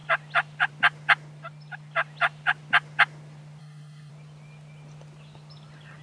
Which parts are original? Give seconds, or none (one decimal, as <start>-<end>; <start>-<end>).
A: 0.0-3.6; 4.1-6.0